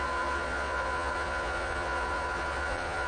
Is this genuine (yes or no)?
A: no